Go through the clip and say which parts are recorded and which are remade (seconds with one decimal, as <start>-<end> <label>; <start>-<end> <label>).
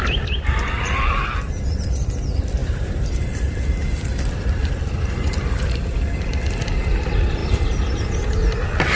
0.0-2.6 recorded; 2.6-5.1 remade; 5.1-7.4 recorded; 7.4-7.9 remade; 7.9-9.0 recorded